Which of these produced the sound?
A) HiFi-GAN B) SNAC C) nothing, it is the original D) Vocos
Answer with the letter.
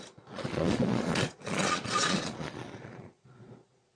D